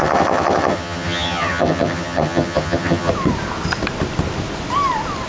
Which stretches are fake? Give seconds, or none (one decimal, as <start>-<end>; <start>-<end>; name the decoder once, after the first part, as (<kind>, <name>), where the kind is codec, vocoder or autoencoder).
0.0-3.1 (vocoder, HiFi-GAN)